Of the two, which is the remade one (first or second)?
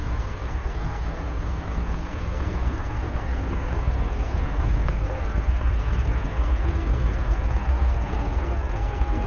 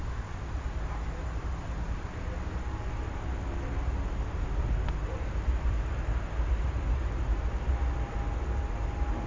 first